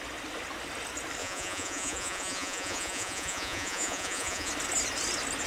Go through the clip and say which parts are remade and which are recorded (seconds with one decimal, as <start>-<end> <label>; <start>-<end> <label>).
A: 0.0-1.2 recorded; 1.2-4.5 remade; 4.5-5.5 recorded